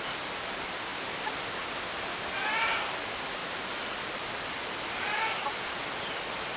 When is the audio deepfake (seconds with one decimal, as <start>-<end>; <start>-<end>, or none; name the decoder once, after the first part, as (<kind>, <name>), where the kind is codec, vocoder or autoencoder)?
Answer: none